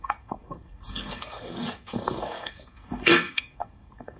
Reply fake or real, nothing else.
fake